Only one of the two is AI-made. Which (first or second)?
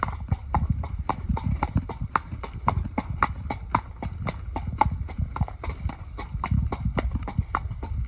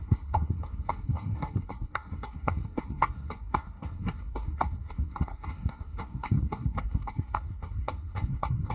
second